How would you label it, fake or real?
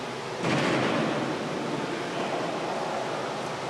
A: real